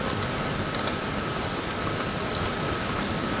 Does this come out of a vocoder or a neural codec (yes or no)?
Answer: no